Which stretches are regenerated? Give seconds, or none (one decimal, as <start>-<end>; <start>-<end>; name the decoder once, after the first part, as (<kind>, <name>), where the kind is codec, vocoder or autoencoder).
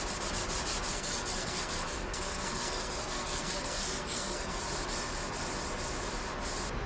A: 0.9-4.6 (codec, SNAC)